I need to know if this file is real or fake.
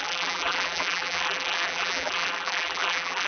fake